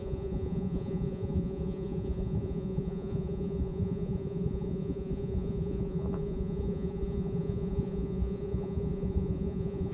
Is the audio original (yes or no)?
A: no